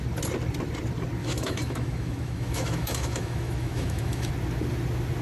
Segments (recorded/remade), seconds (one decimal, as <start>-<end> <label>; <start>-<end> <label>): 0.0-1.2 recorded; 1.2-4.3 remade; 4.3-5.2 recorded